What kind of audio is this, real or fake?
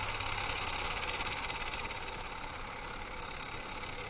real